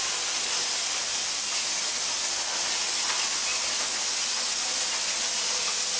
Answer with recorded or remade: recorded